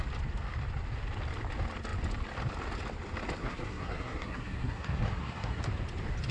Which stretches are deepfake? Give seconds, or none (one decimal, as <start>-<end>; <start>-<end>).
3.4-5.6